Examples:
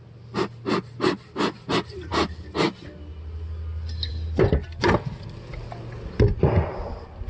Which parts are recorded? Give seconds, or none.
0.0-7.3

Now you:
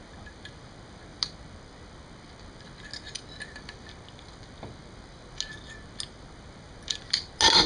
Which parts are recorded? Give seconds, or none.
0.0-7.7